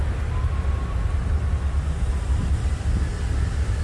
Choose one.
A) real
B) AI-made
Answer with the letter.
A